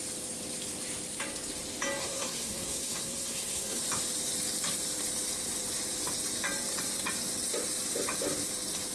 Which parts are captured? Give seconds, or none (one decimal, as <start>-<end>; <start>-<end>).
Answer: 0.0-2.0; 3.8-8.9